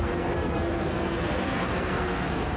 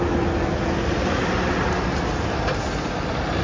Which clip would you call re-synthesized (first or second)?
first